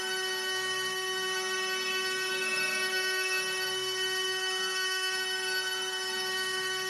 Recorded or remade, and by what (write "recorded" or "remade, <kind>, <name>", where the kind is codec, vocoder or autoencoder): remade, codec, SNAC